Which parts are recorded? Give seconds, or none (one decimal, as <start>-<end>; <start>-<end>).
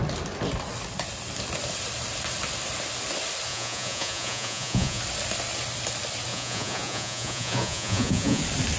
0.0-3.5; 5.0-6.3; 8.4-8.8